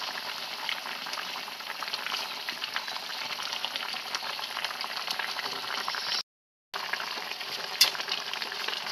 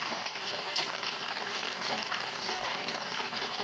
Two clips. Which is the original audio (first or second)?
first